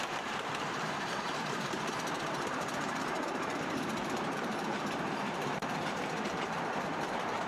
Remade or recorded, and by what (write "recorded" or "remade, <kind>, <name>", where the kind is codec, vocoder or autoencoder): remade, vocoder, BigVGAN v2